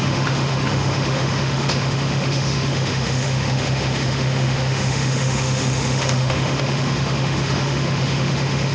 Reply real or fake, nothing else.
fake